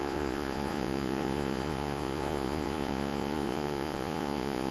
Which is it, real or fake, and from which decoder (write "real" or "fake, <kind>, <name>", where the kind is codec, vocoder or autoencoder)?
fake, vocoder, Vocos